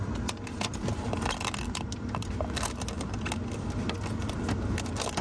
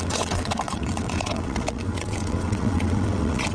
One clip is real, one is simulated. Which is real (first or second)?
first